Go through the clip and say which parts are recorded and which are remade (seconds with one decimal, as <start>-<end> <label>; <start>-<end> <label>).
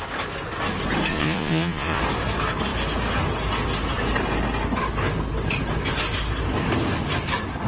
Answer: 0.0-1.1 recorded; 1.1-2.0 remade; 2.0-7.7 recorded